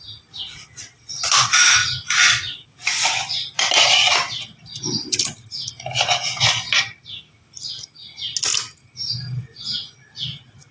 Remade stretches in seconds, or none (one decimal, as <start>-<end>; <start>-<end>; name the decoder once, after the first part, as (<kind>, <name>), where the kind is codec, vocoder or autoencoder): none